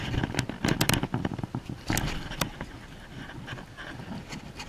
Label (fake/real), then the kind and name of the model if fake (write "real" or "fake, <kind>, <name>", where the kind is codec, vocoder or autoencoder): real